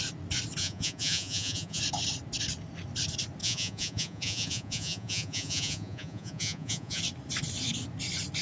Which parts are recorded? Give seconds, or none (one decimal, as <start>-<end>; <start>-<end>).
0.0-0.6; 1.8-3.4; 7.0-8.4